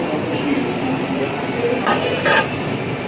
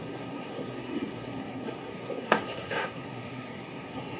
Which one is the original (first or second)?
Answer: first